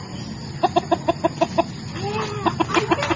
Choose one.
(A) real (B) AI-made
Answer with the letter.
A